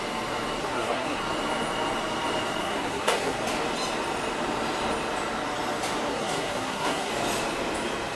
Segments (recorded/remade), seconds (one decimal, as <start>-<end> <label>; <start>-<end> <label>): 0.0-0.6 recorded; 0.6-1.2 remade; 1.2-2.6 recorded; 2.6-3.4 remade; 3.4-6.1 recorded; 6.1-7.1 remade; 7.1-8.2 recorded